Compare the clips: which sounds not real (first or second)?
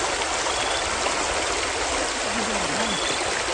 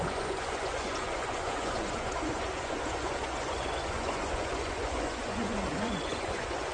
second